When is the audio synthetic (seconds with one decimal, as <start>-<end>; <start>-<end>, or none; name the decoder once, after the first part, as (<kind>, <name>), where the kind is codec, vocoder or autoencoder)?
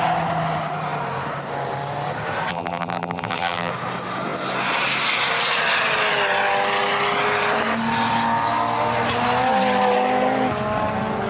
2.5-3.7 (vocoder, BigVGAN v2)